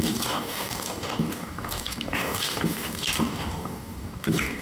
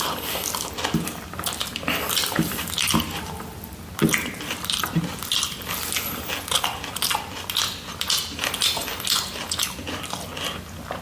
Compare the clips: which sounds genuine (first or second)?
second